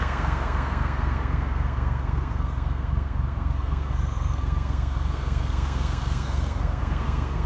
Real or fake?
fake